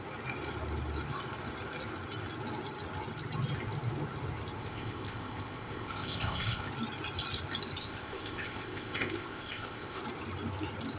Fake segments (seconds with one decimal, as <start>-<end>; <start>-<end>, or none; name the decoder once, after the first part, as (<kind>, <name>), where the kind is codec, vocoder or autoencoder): 4.6-6.7 (codec, ZipCodec); 7.8-10.0